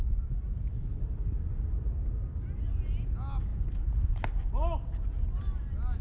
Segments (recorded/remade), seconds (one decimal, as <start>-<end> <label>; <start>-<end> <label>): 0.0-6.0 recorded

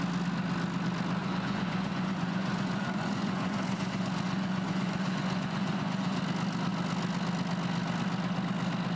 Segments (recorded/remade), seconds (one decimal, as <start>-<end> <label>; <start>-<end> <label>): 0.0-1.2 recorded; 1.2-6.2 remade; 6.2-9.0 recorded

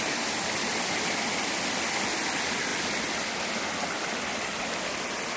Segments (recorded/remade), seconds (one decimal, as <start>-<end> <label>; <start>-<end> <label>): 0.0-5.4 recorded

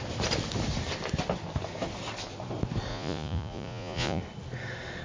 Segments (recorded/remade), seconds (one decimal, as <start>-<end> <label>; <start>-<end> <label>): 0.0-2.9 recorded; 2.9-4.2 remade; 4.2-5.0 recorded

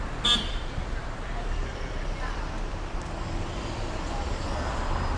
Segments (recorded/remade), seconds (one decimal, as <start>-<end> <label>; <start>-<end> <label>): 0.0-5.2 recorded

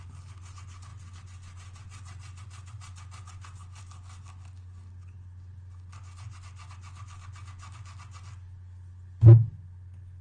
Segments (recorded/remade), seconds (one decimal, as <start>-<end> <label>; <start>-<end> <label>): 0.0-10.2 recorded

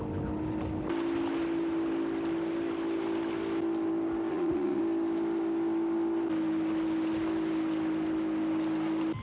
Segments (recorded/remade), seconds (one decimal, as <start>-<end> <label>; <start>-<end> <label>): 0.0-4.3 recorded; 4.3-4.8 remade; 4.8-9.2 recorded

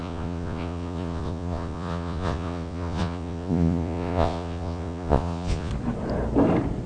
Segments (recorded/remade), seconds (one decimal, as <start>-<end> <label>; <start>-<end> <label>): 0.0-5.7 remade; 5.7-6.9 recorded